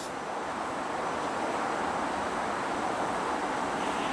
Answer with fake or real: real